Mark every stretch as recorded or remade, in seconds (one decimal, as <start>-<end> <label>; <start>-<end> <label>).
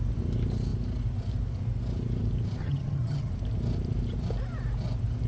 0.0-2.6 recorded; 2.6-3.3 remade; 3.3-5.3 recorded